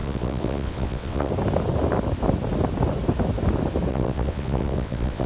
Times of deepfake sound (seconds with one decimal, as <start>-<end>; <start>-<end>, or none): 0.0-1.3; 3.9-5.3